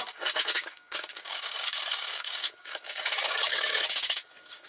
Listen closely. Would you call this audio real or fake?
fake